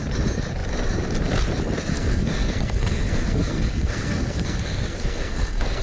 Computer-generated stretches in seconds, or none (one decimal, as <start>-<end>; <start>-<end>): 1.9-5.8